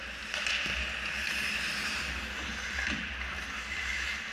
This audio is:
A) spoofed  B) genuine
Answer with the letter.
B